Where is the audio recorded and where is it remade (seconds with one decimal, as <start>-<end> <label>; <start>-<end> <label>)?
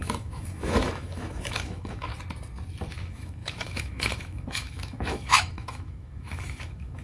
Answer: 0.0-2.1 remade; 2.1-2.9 recorded; 2.9-7.0 remade